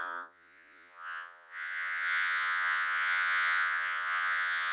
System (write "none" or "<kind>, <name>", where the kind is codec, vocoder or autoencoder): vocoder, Vocos